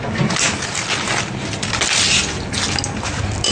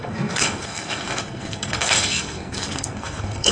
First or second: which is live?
first